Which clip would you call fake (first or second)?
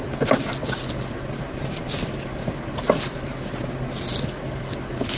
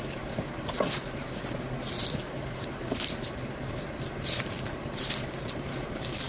second